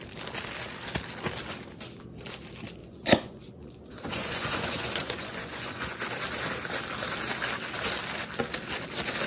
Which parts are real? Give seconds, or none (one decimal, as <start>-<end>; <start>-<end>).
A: 0.0-2.8; 6.0-9.3